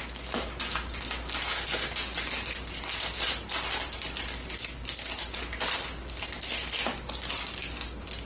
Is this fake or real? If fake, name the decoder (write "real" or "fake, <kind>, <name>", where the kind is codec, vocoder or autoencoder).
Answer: real